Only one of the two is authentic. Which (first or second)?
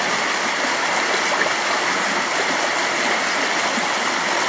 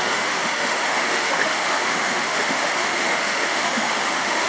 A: first